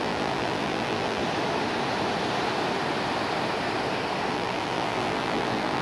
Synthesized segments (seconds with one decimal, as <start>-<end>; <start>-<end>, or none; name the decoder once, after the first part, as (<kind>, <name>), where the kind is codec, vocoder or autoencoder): 0.0-1.2 (vocoder, BigVGAN v2); 4.3-5.8